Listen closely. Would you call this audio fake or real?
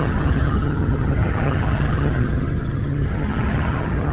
fake